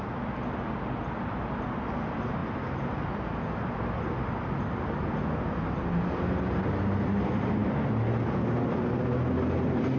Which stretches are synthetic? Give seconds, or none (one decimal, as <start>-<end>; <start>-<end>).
none